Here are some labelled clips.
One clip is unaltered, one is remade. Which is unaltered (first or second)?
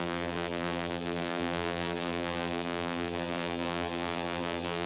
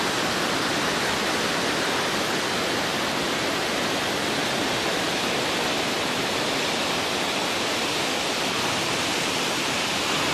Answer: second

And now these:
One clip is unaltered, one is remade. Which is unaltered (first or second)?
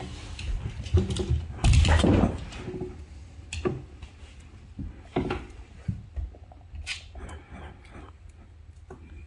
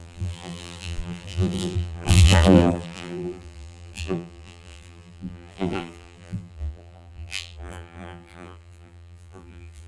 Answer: first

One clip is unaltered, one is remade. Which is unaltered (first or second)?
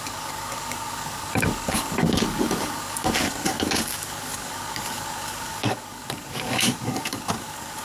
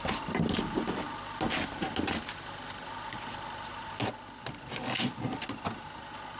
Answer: second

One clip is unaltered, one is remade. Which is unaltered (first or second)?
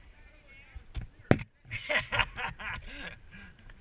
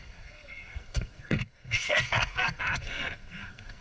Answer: first